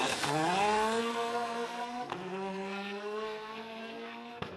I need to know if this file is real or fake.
fake